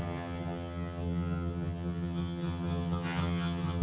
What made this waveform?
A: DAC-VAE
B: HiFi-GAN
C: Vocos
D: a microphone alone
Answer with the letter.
B